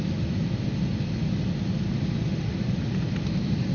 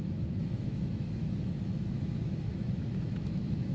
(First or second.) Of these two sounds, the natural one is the first